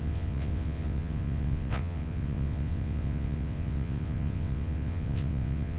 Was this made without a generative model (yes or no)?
no